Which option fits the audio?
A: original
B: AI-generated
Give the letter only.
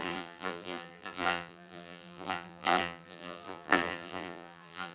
B